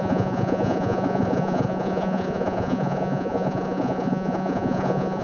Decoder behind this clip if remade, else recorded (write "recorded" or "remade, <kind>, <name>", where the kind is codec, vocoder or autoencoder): remade, vocoder, Vocos